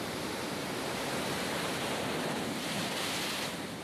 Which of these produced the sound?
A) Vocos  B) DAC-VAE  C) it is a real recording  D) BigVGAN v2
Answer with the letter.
D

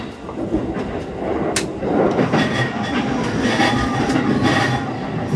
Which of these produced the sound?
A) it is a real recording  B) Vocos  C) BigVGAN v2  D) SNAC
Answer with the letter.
A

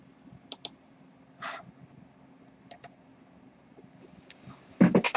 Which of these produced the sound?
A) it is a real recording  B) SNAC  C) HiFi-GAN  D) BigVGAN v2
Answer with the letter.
A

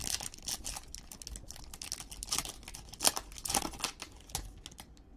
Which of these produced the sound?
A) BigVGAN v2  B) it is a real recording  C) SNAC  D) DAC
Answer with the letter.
B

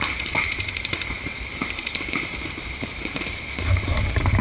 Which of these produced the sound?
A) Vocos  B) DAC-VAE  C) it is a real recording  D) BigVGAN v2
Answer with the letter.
D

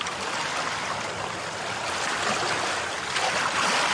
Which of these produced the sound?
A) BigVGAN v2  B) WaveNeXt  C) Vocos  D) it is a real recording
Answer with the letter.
D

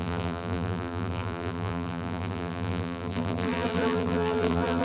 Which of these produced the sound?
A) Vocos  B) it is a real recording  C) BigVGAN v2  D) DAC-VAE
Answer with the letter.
C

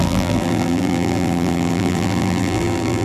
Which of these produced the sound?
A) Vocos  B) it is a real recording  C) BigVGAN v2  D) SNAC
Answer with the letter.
C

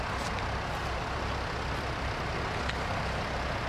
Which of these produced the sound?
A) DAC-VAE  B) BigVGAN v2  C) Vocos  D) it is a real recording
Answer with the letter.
D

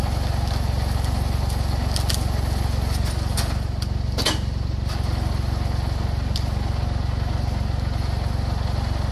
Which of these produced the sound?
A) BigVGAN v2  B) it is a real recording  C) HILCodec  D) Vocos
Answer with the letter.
B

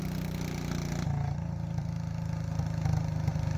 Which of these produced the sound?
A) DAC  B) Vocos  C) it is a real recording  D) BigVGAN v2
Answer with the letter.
C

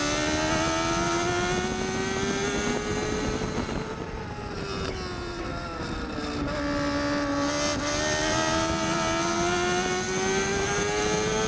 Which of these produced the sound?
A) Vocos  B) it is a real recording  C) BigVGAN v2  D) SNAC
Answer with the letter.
B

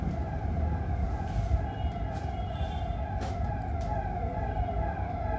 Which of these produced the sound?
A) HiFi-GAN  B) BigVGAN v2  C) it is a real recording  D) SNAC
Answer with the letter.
C